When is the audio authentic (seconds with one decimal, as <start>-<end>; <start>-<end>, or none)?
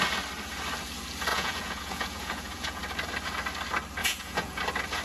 0.0-1.3; 2.8-4.0; 4.6-5.0